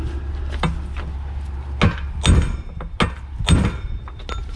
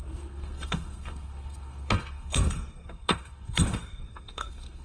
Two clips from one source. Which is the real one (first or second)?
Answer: first